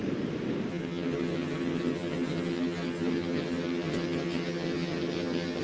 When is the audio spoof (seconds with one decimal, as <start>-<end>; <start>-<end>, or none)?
0.7-5.6